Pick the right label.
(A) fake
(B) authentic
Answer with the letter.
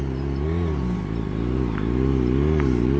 B